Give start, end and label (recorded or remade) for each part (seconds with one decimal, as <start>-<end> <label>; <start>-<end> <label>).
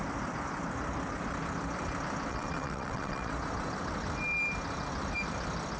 0.0-2.3 recorded; 2.3-3.3 remade; 3.3-5.8 recorded